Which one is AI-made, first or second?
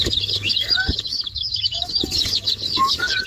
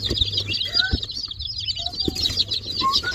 first